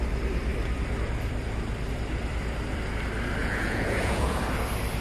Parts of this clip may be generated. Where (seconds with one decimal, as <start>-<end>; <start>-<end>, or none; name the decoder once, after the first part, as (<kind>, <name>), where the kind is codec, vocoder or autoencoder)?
3.4-4.4 (vocoder, Vocos)